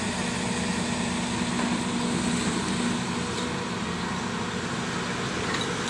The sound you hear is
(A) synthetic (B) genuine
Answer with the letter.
B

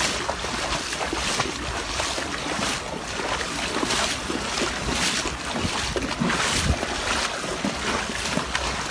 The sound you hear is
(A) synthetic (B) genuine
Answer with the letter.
B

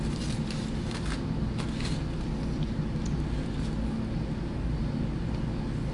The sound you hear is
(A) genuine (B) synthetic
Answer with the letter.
A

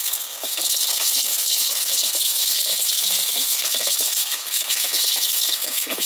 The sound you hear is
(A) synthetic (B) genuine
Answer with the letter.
A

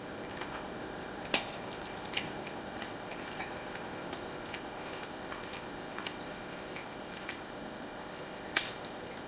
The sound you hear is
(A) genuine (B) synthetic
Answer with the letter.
B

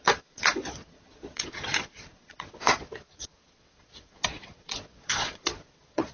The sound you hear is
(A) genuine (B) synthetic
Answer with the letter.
B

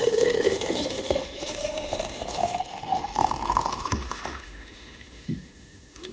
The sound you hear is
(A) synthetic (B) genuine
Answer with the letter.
A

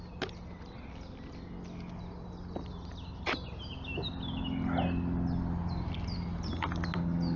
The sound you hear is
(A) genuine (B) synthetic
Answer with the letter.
A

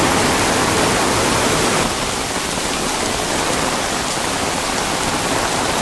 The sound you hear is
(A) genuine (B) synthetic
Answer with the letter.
A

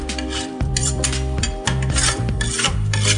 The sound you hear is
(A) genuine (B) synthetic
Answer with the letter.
B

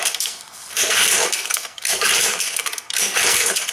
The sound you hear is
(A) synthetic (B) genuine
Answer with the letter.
A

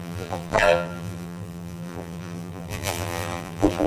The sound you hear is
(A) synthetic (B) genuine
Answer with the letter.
A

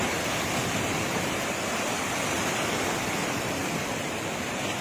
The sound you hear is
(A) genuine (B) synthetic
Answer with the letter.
B